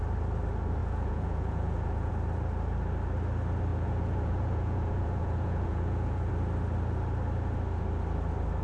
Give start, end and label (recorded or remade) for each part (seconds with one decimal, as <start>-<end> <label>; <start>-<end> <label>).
0.0-0.8 recorded; 0.8-2.1 remade; 2.1-3.7 recorded; 3.7-6.3 remade; 6.3-8.6 recorded